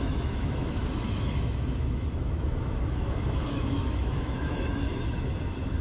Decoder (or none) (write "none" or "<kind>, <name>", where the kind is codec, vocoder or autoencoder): autoencoder, DAC-VAE